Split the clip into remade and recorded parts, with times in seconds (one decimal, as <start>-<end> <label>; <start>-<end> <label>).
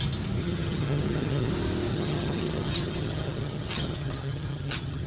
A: 0.0-0.4 recorded; 0.4-1.5 remade; 1.5-1.9 recorded; 1.9-5.1 remade